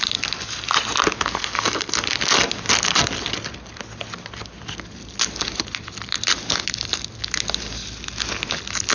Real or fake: real